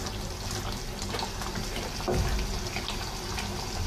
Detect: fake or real real